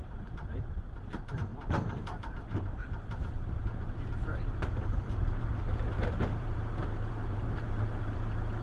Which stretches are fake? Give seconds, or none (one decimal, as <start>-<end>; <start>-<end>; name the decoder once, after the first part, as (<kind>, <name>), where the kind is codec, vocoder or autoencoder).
0.0-8.6 (vocoder, BigVGAN v2)